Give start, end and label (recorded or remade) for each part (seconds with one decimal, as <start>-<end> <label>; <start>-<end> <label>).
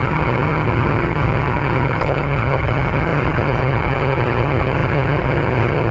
0.0-5.9 remade